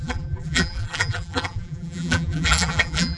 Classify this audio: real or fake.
fake